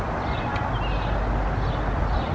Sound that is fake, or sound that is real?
real